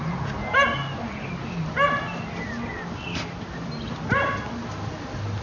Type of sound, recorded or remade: recorded